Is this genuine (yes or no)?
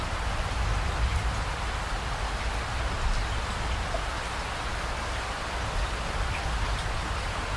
yes